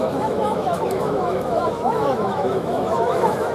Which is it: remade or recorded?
remade